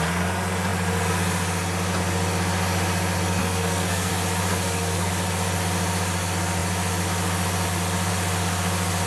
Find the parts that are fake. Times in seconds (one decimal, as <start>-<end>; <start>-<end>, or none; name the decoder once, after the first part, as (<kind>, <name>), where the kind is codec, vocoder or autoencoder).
3.4-4.1 (codec, SNAC); 4.5-5.1